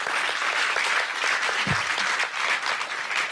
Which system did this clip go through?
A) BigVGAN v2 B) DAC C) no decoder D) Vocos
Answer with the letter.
C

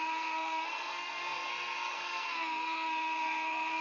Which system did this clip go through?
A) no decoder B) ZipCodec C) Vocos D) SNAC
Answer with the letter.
D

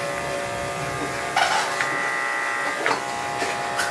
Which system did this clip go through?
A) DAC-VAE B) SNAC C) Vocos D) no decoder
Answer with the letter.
D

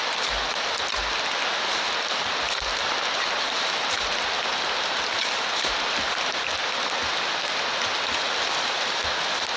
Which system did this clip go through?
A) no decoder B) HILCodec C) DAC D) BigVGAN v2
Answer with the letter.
A